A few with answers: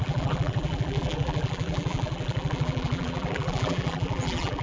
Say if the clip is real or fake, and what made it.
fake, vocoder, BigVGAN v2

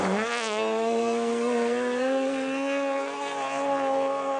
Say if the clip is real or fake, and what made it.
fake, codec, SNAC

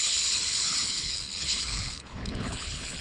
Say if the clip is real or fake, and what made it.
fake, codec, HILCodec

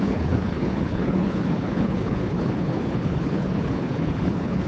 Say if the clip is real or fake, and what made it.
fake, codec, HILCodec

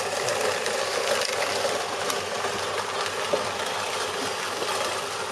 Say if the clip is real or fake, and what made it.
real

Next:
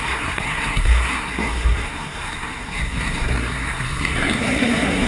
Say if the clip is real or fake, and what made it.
fake, codec, SNAC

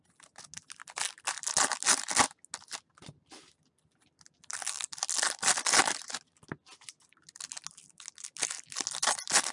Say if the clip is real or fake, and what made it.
real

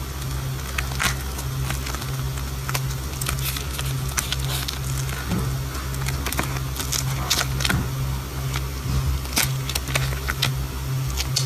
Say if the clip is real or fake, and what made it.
real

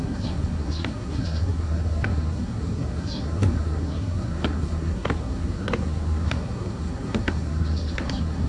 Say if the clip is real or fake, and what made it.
fake, codec, SNAC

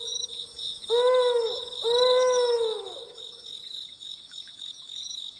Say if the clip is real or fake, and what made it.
fake, autoencoder, DAC-VAE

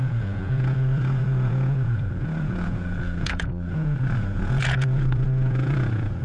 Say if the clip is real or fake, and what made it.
fake, vocoder, Vocos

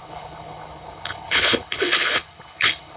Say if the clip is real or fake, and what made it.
fake, codec, HILCodec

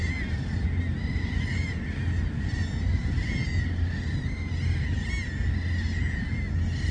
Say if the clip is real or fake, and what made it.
real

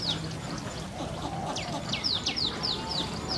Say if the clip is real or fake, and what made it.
real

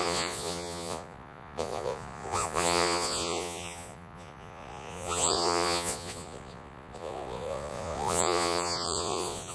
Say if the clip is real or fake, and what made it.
fake, vocoder, Vocos